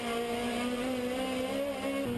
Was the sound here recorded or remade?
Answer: recorded